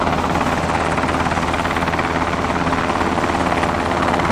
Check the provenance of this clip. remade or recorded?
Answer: recorded